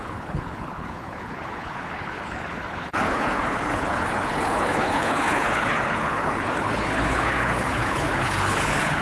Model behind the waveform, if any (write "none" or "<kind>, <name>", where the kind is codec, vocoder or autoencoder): codec, HILCodec